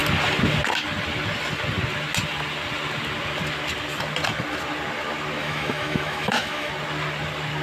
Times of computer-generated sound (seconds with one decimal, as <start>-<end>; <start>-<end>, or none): 5.4-6.7